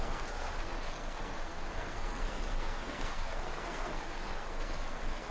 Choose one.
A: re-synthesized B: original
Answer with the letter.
A